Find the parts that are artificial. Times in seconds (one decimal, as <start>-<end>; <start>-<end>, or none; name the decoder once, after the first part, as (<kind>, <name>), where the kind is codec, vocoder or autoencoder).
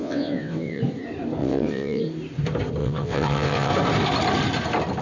0.0-0.8 (vocoder, WaveNeXt); 1.4-2.0; 2.8-3.7